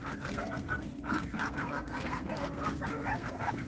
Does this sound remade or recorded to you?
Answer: remade